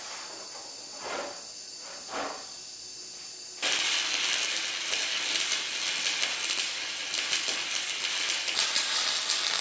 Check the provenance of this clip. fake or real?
real